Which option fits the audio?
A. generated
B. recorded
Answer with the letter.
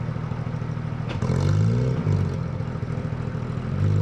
B